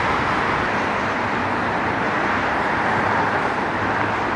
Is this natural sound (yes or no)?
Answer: yes